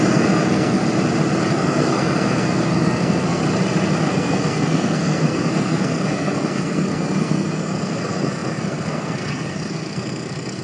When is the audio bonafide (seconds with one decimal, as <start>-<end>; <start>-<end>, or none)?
0.8-1.5; 3.4-4.0